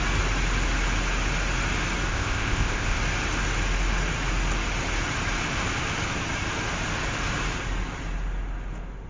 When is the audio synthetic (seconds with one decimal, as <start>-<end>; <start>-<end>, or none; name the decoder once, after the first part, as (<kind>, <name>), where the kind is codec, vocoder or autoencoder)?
2.1-3.0 (codec, ZipCodec)